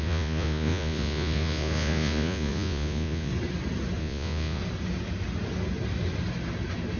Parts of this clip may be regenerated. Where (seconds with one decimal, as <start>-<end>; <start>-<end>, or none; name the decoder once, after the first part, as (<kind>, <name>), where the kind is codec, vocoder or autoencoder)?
0.0-3.3 (vocoder, Vocos); 4.0-4.6